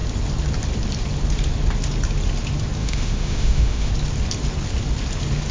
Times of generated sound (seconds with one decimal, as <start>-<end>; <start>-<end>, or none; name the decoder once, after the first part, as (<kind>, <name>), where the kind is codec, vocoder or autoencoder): 2.8-3.9 (autoencoder, DAC-VAE)